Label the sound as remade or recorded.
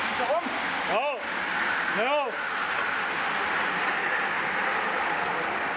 recorded